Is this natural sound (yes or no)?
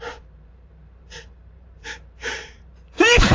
no